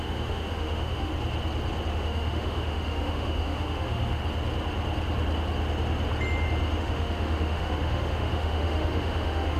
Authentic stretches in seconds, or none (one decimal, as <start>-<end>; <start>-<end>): 1.1-1.9; 4.2-6.8